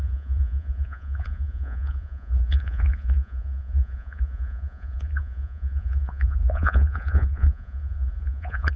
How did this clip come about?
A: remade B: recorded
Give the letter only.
A